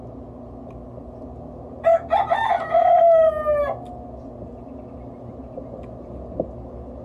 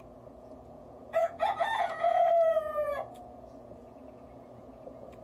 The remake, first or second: second